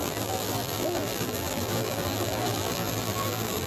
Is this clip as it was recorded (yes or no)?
no